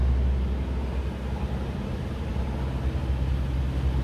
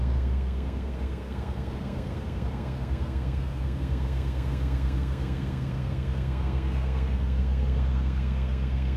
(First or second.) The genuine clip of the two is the first